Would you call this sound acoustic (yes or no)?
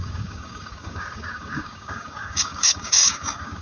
no